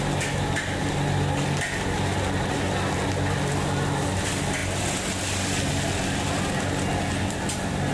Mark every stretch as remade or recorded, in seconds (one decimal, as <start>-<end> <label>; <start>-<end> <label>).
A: 0.0-7.9 recorded